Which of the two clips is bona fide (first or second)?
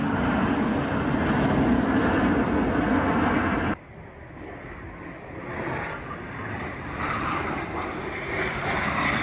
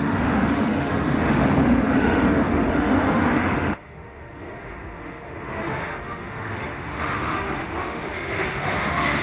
first